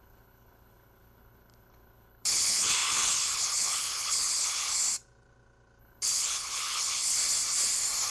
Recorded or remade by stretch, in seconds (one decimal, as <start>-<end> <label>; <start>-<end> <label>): 0.0-4.9 remade; 4.9-5.8 recorded; 5.8-7.2 remade; 7.2-8.1 recorded